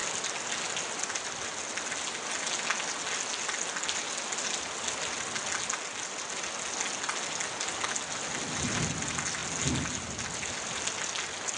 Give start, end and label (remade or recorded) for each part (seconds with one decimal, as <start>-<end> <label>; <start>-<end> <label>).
0.0-11.6 recorded